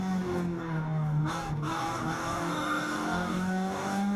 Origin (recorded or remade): remade